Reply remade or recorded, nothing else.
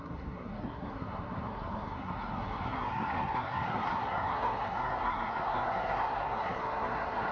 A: remade